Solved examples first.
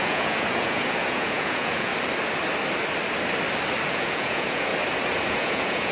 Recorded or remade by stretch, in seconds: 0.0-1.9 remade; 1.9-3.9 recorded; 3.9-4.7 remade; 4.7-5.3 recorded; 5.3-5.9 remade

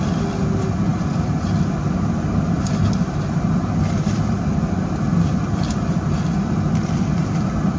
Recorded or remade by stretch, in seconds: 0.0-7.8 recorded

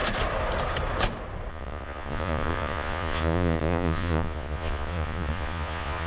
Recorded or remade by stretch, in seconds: 0.0-1.5 recorded; 1.5-6.1 remade

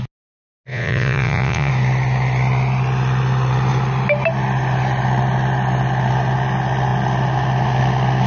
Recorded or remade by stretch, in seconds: 0.0-0.7 recorded; 0.7-1.7 remade; 1.7-8.3 recorded

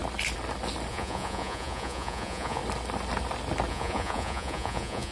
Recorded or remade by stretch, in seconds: 0.0-0.9 recorded; 0.9-2.6 remade; 2.6-3.7 recorded; 3.7-5.1 remade

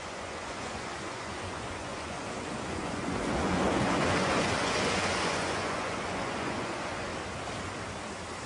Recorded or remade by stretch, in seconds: 0.0-7.1 remade; 7.1-8.5 recorded

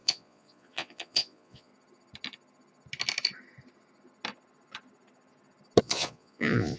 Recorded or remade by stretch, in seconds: 0.0-1.7 remade; 1.7-5.8 recorded; 5.8-6.8 remade